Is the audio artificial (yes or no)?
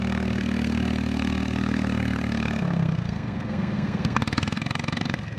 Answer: yes